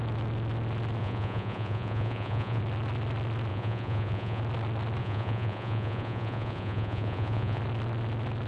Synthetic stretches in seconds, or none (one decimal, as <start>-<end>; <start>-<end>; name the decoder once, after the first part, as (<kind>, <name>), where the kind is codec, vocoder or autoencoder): 1.0-2.6 (vocoder, Vocos); 3.5-4.4; 5.0-7.6

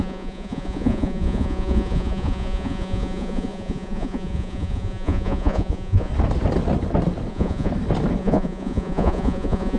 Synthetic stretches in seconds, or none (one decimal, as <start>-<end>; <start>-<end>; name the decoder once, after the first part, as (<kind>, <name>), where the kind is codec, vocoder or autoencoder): 0.0-6.1 (vocoder, Vocos); 7.3-7.7; 8.2-9.8

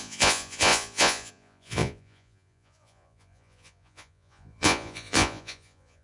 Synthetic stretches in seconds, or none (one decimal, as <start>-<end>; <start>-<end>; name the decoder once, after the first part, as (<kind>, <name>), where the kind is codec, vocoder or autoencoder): 0.0-6.0 (vocoder, Vocos)

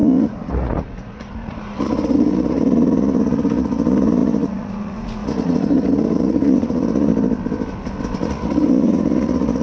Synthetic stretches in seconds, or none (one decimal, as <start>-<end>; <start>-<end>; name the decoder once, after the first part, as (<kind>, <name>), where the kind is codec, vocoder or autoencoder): 0.0-7.1 (vocoder, Vocos); 8.2-9.6

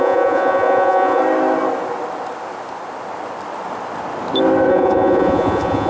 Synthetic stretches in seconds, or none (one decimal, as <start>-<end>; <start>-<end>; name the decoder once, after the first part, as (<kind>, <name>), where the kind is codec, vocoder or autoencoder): 0.0-1.2 (vocoder, Vocos); 4.7-5.9